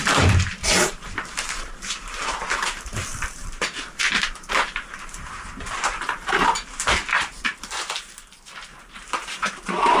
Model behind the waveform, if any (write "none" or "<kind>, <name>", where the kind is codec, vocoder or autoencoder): vocoder, BigVGAN v2